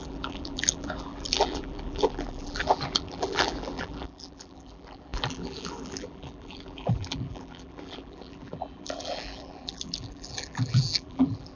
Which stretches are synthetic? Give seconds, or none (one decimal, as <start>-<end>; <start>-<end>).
0.0-11.6